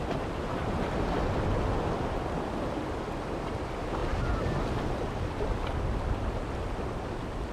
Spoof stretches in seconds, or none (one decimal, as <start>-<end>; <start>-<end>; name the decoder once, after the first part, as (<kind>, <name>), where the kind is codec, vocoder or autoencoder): none